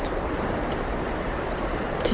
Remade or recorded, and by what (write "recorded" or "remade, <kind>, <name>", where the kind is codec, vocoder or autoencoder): recorded